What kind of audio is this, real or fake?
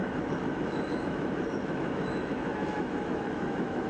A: fake